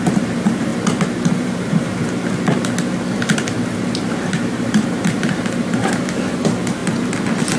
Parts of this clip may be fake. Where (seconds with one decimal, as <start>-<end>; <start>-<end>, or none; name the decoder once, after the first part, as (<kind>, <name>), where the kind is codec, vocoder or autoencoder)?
0.0-0.7 (vocoder, BigVGAN v2); 1.3-2.0; 3.1-6.8